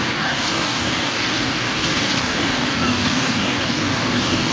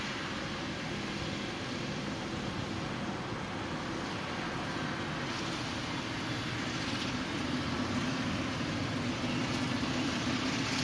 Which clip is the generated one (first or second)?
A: first